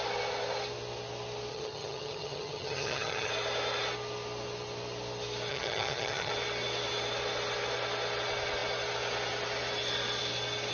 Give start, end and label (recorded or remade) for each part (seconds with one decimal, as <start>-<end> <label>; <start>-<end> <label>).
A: 0.0-1.5 recorded; 1.5-3.3 remade; 3.3-5.5 recorded; 5.5-6.3 remade; 6.3-10.7 recorded